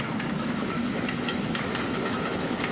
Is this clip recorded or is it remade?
remade